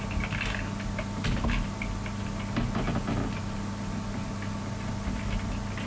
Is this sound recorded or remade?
recorded